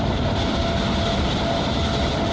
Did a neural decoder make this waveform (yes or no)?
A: no